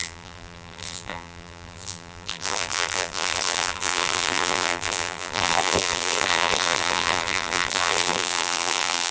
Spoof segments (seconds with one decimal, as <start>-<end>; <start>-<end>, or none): 0.0-9.1